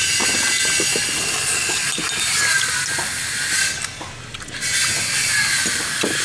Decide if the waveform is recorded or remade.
recorded